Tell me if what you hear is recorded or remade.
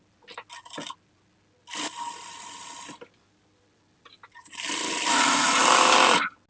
recorded